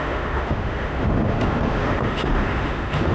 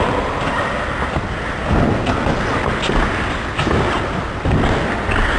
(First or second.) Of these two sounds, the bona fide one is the second